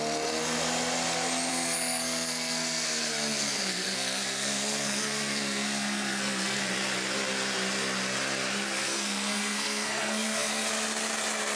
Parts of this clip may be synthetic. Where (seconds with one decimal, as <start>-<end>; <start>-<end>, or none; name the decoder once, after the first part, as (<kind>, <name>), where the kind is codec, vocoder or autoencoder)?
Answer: 1.5-6.6 (codec, SNAC); 8.8-10.7